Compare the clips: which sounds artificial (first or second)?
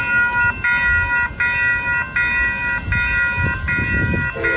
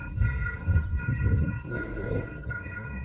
second